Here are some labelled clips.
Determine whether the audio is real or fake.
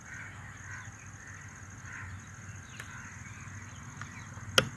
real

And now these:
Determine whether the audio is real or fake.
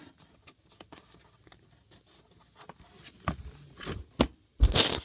real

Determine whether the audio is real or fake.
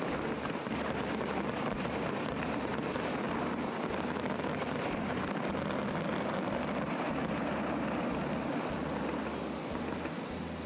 fake